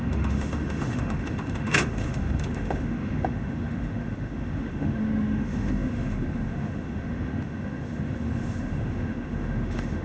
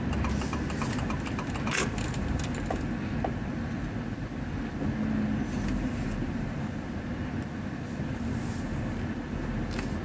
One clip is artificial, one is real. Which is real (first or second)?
second